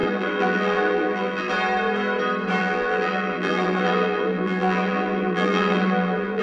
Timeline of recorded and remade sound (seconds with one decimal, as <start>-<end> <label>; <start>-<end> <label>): 0.0-1.5 remade; 1.5-2.6 recorded; 2.6-6.4 remade

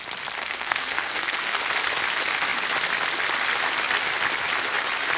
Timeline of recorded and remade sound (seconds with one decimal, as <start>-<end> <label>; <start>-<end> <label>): 0.0-0.4 recorded; 0.4-1.6 remade; 1.6-5.2 recorded

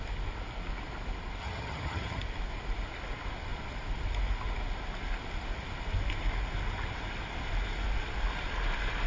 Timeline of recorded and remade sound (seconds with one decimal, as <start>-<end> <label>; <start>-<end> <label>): 0.0-1.4 recorded; 1.4-2.2 remade; 2.2-9.1 recorded

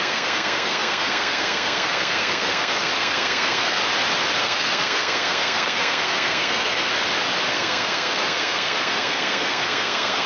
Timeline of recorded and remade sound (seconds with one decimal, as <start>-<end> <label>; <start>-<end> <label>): 0.0-3.8 remade; 3.8-4.4 recorded; 4.4-6.9 remade; 6.9-7.5 recorded; 7.5-10.3 remade

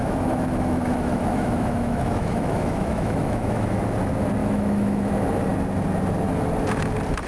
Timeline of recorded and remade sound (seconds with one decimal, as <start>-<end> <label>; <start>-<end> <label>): 0.0-3.8 remade; 3.8-4.4 recorded; 4.4-5.1 remade; 5.1-7.3 recorded

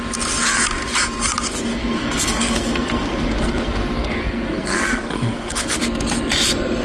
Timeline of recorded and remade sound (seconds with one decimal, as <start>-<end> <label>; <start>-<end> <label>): 0.0-1.7 recorded; 1.7-5.8 remade; 5.8-6.8 recorded

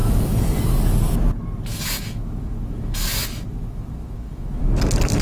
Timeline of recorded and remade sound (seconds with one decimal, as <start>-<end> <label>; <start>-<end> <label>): 0.0-0.6 remade; 0.6-1.7 recorded; 1.7-4.8 remade; 4.8-5.2 recorded

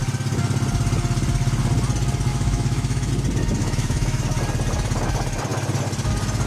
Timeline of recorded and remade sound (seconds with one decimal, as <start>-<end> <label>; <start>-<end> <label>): 0.0-2.3 recorded; 2.3-3.1 remade; 3.1-3.6 recorded; 3.6-4.2 remade; 4.2-6.5 recorded